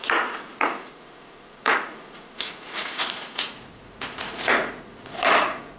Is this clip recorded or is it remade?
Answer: remade